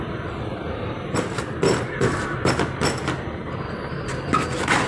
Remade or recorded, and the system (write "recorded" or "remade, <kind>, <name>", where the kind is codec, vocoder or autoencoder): recorded